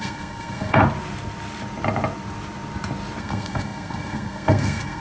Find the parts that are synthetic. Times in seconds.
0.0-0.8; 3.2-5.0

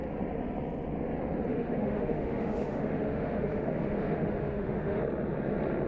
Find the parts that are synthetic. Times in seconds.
1.5-5.0

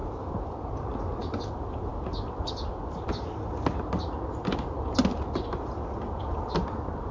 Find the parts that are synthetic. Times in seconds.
none

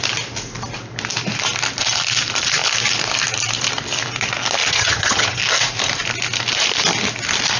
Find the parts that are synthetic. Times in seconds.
4.7-5.4

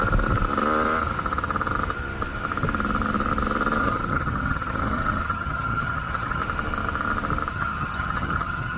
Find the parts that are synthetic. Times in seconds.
3.8-6.4; 7.5-8.8

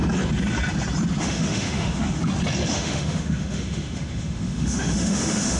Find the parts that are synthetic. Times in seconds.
1.2-2.2; 2.7-5.6

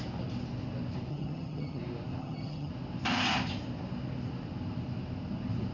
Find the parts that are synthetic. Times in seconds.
1.1-1.8; 2.2-2.7

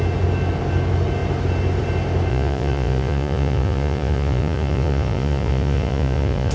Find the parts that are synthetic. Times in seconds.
2.3-6.5